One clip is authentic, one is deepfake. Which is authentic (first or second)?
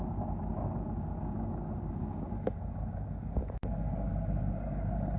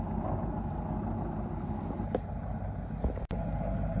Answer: second